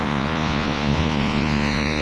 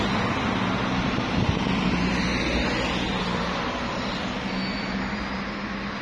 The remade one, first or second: first